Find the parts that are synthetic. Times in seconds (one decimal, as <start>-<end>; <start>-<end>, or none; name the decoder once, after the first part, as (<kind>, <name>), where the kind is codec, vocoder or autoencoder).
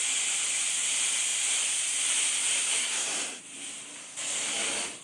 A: 2.8-3.4 (codec, SNAC)